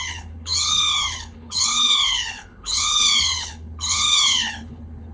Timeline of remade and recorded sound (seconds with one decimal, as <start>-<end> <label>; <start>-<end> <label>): 0.0-5.1 remade